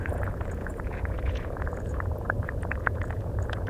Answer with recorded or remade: remade